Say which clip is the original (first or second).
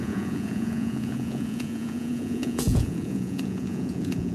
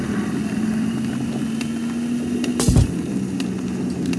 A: second